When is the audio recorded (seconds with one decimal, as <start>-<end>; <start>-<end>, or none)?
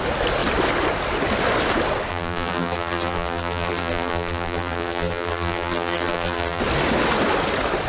0.0-2.1; 6.6-7.9